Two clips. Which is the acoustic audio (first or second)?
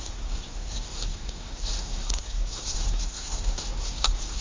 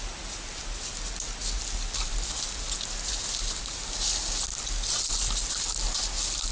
second